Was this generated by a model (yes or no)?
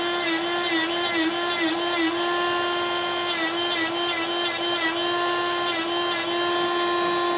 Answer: no